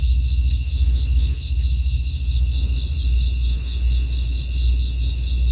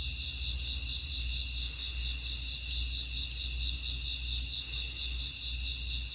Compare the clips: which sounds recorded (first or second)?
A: second